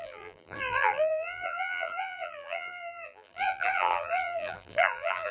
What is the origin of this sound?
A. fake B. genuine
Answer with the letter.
A